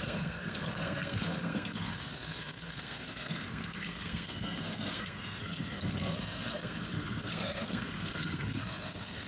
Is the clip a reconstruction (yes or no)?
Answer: yes